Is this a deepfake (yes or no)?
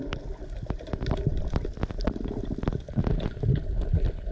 no